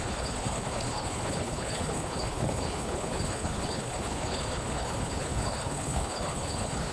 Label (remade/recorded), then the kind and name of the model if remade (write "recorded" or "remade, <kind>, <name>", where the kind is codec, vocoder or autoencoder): remade, codec, HILCodec